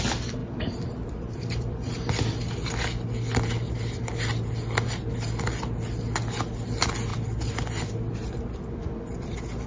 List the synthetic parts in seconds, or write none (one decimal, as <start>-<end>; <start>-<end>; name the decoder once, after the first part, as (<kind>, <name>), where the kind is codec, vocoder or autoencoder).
0.4-1.9 (vocoder, BigVGAN v2); 7.1-7.9